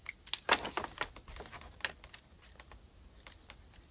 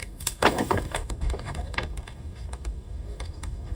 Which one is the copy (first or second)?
second